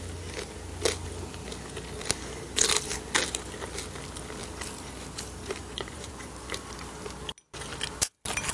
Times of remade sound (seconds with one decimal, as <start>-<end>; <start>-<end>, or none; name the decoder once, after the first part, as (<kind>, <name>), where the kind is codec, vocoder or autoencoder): 5.6-6.3 (vocoder, Vocos)